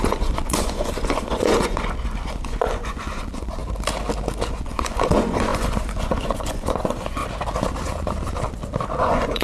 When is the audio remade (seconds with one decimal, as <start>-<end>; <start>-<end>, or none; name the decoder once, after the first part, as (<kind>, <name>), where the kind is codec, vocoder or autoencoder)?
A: 0.0-3.6 (vocoder, Vocos); 4.5-7.2; 9.0-9.4